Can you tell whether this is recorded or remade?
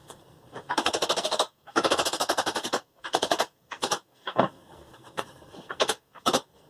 remade